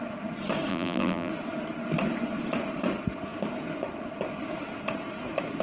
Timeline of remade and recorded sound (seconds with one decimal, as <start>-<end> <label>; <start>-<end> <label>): 0.0-0.7 recorded; 0.7-1.3 remade; 1.3-5.6 recorded